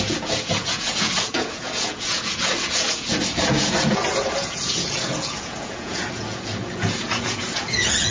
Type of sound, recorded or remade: remade